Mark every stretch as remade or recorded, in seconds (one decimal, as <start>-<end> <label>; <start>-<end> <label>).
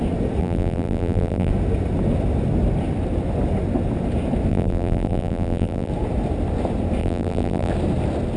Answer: 0.0-0.4 recorded; 0.4-1.5 remade; 1.5-4.5 recorded; 4.5-5.9 remade; 5.9-7.0 recorded; 7.0-7.7 remade; 7.7-8.4 recorded